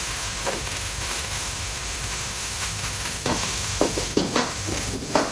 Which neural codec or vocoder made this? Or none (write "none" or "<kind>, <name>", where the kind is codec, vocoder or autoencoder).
autoencoder, DAC-VAE